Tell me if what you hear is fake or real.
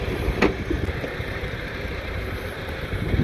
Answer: fake